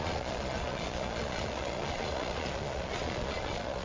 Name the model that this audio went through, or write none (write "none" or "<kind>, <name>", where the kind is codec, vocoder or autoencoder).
vocoder, Vocos